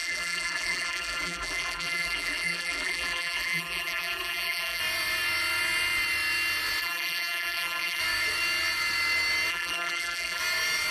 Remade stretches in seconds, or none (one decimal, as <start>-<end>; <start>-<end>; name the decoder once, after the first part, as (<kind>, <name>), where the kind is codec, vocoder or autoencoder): 0.0-4.8 (vocoder, BigVGAN v2); 6.8-8.0; 9.5-10.4